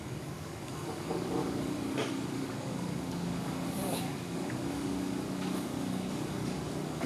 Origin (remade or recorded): remade